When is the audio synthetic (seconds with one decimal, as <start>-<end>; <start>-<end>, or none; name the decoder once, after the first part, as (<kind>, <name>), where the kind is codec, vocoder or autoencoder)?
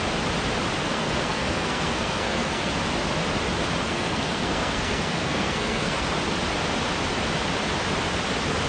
0.8-2.7 (codec, SNAC); 3.8-6.1